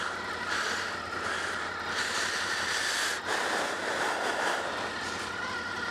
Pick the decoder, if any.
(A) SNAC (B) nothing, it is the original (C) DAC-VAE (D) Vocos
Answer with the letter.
B